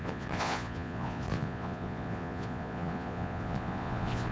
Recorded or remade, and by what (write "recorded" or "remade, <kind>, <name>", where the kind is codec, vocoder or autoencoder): remade, vocoder, Vocos